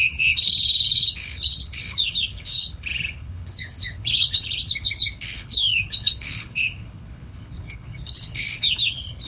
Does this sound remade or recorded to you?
remade